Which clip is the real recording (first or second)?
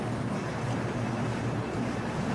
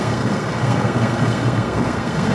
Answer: first